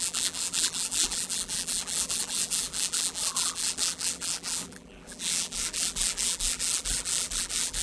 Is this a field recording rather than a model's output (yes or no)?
no